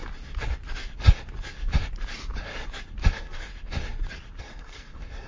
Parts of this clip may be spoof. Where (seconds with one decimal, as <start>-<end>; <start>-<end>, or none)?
3.1-3.5; 4.4-5.3